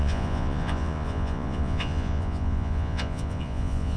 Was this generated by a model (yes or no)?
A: yes